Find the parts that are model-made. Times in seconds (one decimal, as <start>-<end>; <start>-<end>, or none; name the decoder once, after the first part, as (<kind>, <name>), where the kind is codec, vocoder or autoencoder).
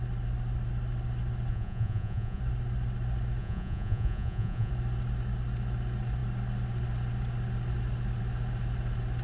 1.5-2.4 (vocoder, Vocos); 3.4-4.7